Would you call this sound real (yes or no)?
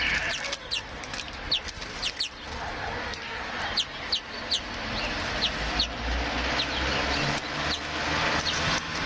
yes